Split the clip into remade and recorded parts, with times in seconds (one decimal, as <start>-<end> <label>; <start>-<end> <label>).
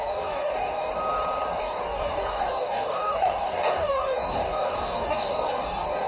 0.0-0.9 remade; 0.9-1.6 recorded; 1.6-6.1 remade